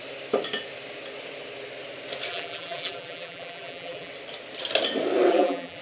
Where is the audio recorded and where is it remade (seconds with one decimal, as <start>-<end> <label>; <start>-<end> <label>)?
0.0-2.3 recorded; 2.3-4.1 remade; 4.1-5.3 recorded; 5.3-5.8 remade

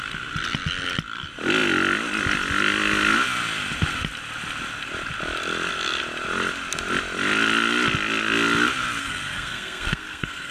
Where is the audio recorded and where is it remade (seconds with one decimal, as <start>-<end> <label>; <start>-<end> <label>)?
0.0-9.0 recorded; 9.0-10.5 remade

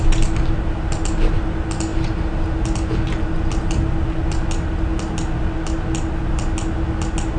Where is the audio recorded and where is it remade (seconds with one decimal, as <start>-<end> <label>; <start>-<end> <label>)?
0.0-7.4 recorded

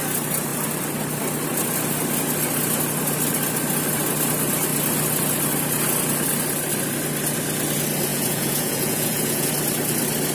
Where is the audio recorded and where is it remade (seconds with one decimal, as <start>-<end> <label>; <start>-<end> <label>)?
0.0-8.1 recorded; 8.1-9.5 remade; 9.5-10.3 recorded